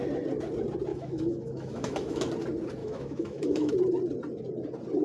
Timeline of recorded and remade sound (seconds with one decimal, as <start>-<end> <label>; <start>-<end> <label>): 0.0-0.9 recorded; 0.9-2.3 remade; 2.3-2.8 recorded; 2.8-3.7 remade; 3.7-5.0 recorded